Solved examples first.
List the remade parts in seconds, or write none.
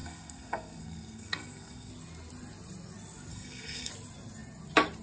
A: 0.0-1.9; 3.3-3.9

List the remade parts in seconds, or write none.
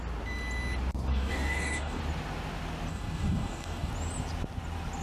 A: 1.1-2.0; 2.9-3.9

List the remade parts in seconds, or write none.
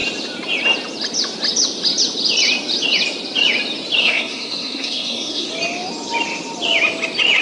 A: 4.0-5.5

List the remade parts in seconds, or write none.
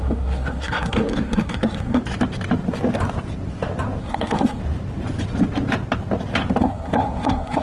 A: 0.0-2.0; 4.0-4.6; 6.6-7.6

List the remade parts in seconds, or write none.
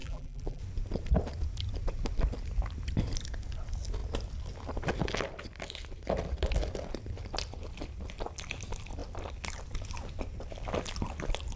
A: 0.0-0.6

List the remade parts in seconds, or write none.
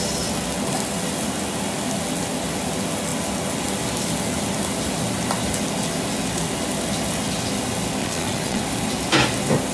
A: 8.0-8.6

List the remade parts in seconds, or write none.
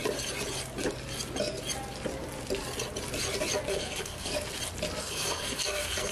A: 3.7-4.3; 5.0-6.1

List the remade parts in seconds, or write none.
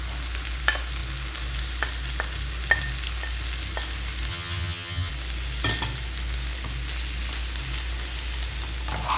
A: 4.3-5.1